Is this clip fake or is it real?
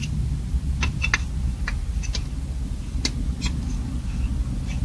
real